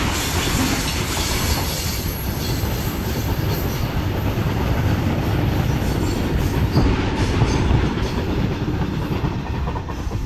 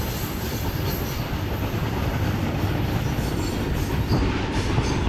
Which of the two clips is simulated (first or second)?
first